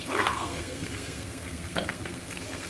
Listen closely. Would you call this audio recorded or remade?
remade